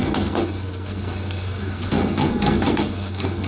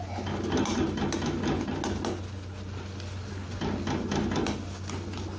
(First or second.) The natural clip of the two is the second